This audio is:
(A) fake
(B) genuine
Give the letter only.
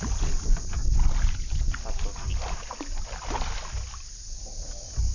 B